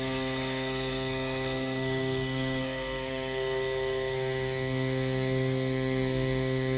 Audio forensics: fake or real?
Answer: fake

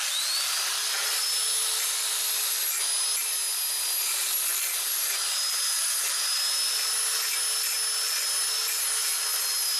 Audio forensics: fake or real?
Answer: real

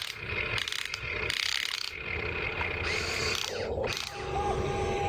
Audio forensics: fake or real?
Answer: real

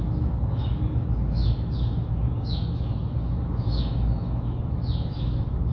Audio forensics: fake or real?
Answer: fake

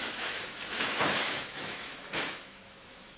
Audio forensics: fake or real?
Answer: fake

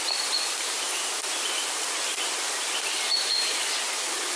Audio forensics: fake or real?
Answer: fake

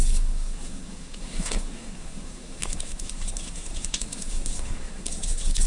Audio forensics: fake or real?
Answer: fake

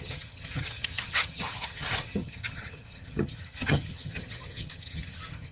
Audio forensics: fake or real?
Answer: fake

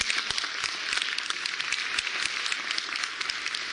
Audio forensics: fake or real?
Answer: real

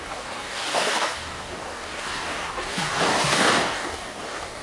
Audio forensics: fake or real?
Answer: fake